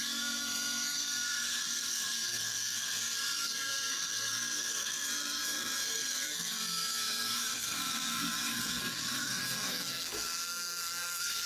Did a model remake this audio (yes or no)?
yes